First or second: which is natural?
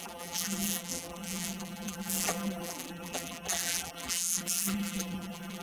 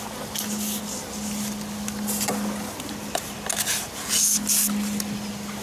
second